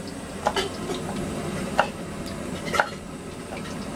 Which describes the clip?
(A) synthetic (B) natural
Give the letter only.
B